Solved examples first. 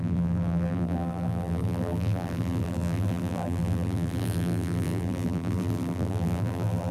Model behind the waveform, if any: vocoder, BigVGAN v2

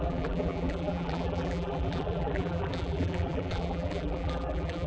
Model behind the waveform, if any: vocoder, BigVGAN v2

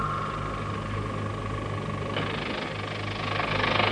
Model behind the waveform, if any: none